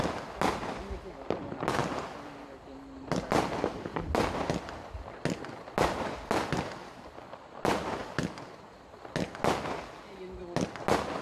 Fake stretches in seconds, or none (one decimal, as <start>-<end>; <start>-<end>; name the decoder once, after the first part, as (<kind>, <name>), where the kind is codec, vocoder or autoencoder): none